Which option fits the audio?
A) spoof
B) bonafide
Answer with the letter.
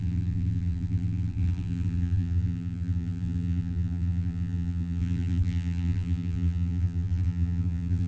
A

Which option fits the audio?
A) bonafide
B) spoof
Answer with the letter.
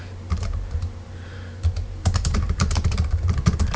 B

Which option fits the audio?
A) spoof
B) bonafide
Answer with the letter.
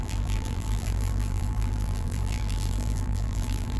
A